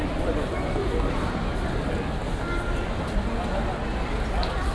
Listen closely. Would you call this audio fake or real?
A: real